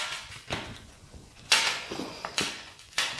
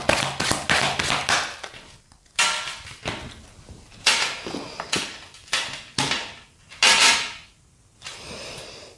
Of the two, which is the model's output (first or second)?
first